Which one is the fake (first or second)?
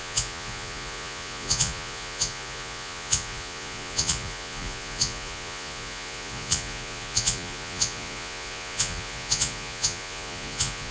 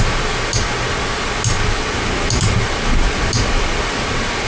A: first